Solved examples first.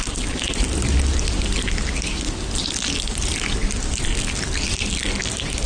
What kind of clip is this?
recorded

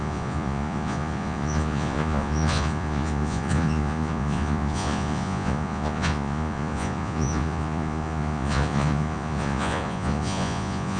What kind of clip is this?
remade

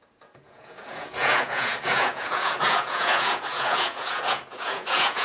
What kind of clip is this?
remade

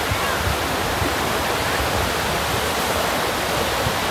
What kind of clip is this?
recorded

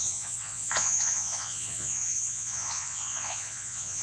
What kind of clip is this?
remade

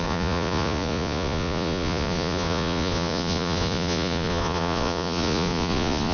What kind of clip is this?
remade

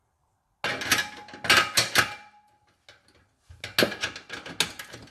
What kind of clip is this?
recorded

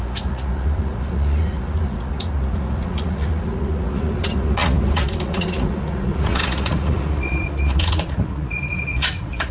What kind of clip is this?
remade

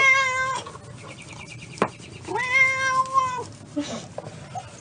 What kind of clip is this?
recorded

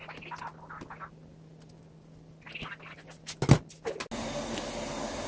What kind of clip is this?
recorded